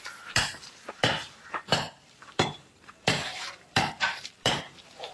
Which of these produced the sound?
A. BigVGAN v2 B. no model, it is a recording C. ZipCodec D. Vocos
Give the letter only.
A